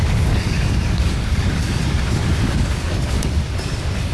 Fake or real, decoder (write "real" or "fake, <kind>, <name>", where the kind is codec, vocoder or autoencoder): fake, codec, DAC